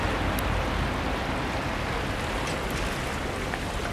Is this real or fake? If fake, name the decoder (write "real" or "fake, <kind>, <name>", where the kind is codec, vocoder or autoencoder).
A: real